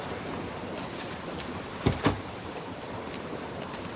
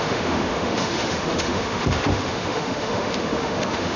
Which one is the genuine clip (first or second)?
first